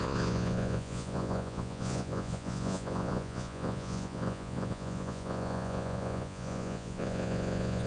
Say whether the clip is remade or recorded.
remade